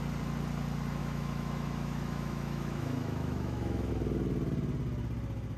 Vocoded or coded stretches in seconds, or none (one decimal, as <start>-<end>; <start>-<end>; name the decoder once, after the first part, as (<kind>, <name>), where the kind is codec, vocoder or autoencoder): 1.0-3.9 (autoencoder, DAC-VAE)